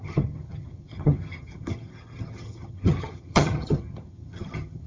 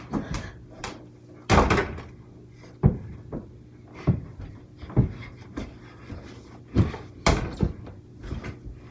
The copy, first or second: first